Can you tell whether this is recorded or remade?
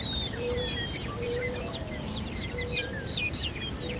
remade